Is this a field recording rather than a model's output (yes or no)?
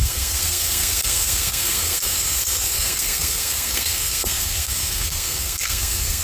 no